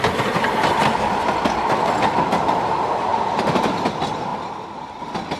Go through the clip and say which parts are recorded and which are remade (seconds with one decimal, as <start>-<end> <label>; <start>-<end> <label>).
0.0-5.4 recorded